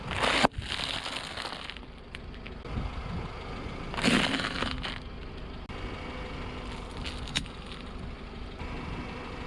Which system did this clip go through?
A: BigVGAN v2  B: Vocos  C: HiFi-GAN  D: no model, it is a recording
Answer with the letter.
D